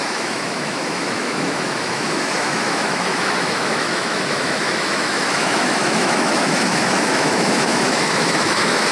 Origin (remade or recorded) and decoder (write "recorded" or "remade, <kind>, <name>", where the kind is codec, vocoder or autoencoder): remade, autoencoder, DAC-VAE